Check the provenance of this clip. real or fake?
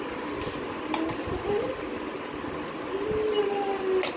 real